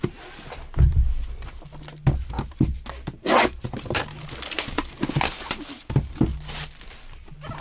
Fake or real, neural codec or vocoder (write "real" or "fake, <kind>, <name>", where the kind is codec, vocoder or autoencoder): real